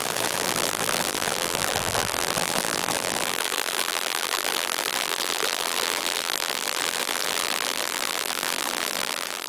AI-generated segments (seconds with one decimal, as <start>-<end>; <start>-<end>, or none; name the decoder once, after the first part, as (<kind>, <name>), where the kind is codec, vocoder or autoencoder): 0.0-9.5 (vocoder, BigVGAN v2)